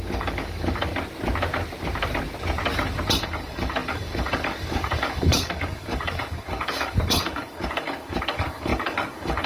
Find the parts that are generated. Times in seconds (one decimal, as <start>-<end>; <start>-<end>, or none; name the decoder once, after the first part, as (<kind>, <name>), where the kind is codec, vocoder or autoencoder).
0.0-0.9 (codec, DAC); 3.2-9.5